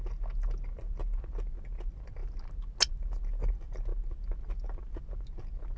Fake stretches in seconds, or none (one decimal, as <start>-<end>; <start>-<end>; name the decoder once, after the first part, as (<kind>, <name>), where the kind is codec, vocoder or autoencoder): none